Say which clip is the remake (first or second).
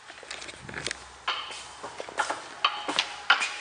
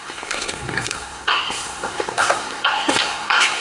second